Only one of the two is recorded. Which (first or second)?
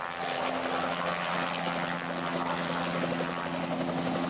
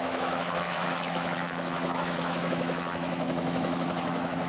first